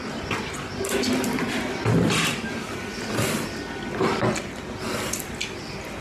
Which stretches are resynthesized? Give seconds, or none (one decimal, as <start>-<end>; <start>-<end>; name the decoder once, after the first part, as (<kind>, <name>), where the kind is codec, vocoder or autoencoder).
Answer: none